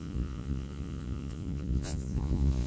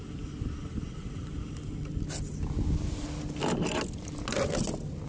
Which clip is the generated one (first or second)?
first